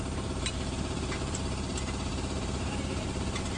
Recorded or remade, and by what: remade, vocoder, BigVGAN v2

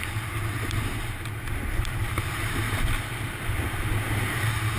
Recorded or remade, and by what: recorded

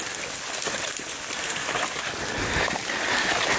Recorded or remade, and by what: recorded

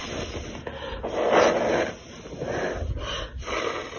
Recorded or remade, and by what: recorded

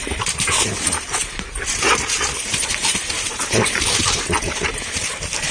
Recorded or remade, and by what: remade, vocoder, BigVGAN v2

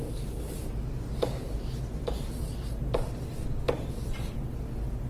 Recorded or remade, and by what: recorded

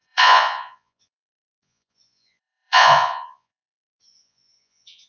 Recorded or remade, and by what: remade, vocoder, Vocos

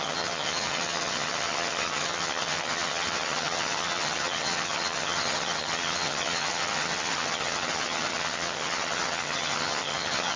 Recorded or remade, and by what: remade, vocoder, HiFi-GAN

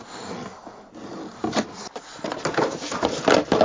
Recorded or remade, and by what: recorded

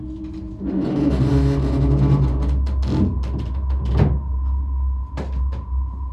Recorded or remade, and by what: recorded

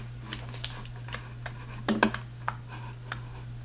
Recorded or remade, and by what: recorded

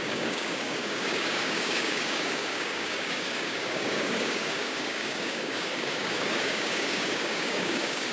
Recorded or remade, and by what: remade, codec, DAC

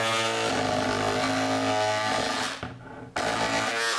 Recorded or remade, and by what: recorded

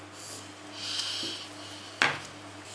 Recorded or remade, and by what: recorded